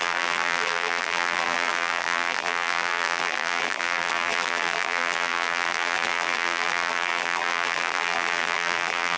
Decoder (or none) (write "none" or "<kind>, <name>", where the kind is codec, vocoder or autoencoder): vocoder, BigVGAN v2